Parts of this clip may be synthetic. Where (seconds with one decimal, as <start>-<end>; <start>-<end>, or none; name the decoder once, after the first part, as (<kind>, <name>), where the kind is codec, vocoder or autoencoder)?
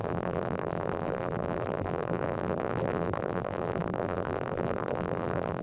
0.0-5.6 (vocoder, BigVGAN v2)